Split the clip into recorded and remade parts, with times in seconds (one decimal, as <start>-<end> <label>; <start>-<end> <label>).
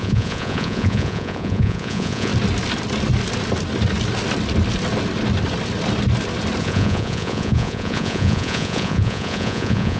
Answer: 0.0-2.3 remade; 2.3-6.6 recorded; 6.6-10.0 remade